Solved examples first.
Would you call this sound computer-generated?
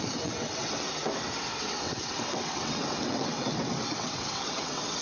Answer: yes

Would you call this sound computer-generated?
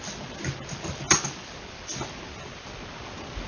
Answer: no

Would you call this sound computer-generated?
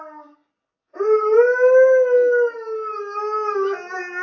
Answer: no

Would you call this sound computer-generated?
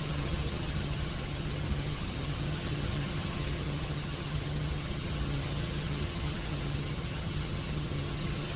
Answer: yes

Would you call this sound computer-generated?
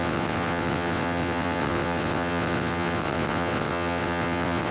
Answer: yes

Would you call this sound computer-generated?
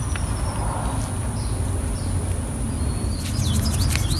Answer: no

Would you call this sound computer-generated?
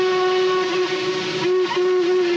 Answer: no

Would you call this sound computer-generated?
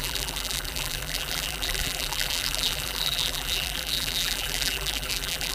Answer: yes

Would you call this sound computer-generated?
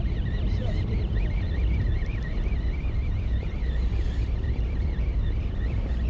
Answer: yes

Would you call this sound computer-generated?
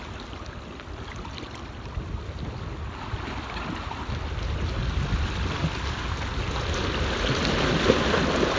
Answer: no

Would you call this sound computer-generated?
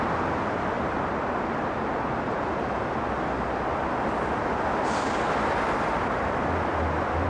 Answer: no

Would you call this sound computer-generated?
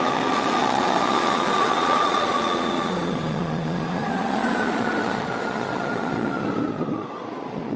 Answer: yes